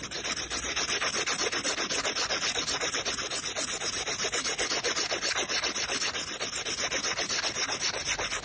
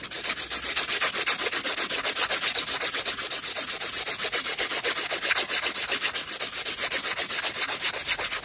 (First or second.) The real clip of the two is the second